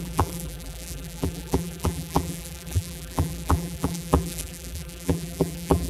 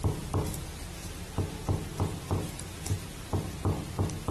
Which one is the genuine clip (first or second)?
second